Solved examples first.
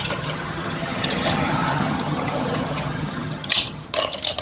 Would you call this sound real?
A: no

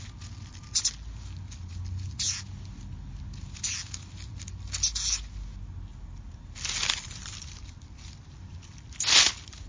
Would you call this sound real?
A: yes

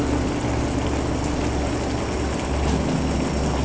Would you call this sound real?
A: yes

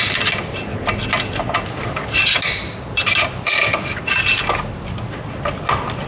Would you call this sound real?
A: yes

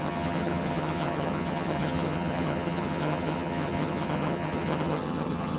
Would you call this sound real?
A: no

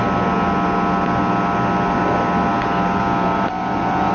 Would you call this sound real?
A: yes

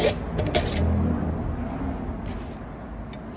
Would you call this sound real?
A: yes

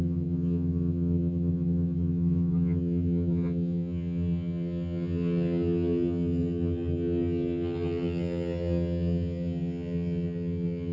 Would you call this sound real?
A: no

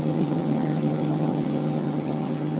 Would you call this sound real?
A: no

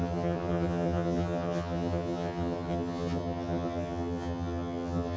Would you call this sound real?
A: no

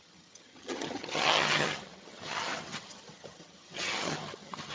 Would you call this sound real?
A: no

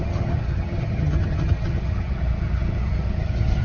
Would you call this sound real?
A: no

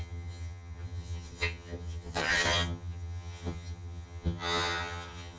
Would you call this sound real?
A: no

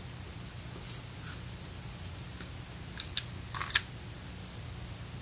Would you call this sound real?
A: yes